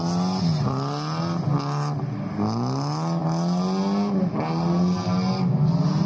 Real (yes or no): yes